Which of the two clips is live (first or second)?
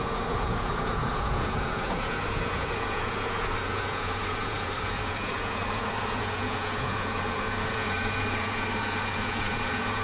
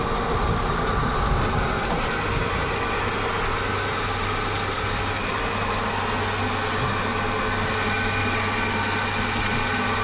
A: second